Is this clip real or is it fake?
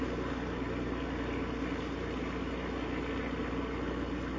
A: real